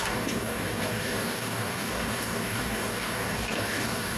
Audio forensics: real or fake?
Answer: fake